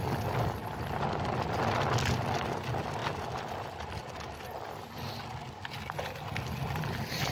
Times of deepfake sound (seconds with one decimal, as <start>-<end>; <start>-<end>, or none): none